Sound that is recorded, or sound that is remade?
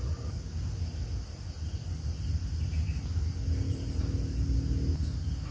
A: recorded